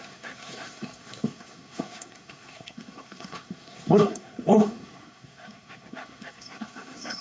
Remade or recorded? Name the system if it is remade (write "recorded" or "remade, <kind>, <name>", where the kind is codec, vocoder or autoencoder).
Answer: remade, codec, SNAC